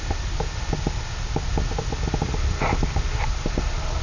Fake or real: real